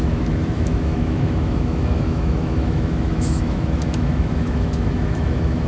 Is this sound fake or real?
fake